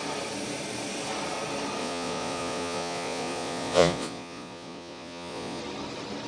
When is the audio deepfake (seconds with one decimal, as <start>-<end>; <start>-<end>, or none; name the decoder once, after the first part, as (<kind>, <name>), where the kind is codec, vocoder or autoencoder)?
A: 1.8-5.6 (vocoder, Vocos)